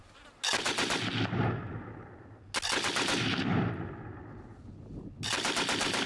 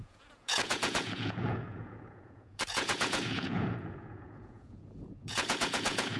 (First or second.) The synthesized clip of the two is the second